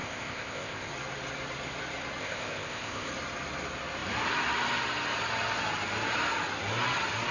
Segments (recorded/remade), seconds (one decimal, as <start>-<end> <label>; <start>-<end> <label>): 0.0-0.9 remade; 0.9-2.2 recorded; 2.2-3.1 remade; 3.1-7.3 recorded

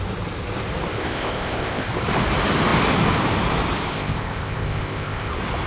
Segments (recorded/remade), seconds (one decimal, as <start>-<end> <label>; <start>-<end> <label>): 0.0-0.9 recorded; 0.9-1.9 remade; 1.9-3.9 recorded; 3.9-5.3 remade; 5.3-5.7 recorded